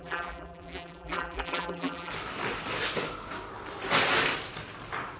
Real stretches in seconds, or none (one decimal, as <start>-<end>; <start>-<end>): 2.1-5.2